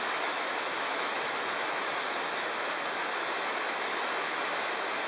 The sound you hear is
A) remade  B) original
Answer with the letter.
A